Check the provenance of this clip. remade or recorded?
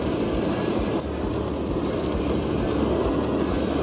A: recorded